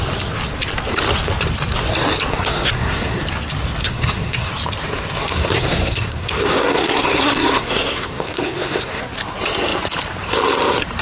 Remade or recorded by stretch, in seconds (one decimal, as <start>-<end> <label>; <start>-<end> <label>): 0.0-2.3 recorded; 2.3-3.2 remade; 3.2-3.8 recorded; 3.8-4.5 remade; 4.5-5.2 recorded; 5.2-9.0 remade; 9.0-11.0 recorded